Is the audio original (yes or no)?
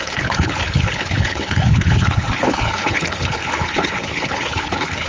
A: no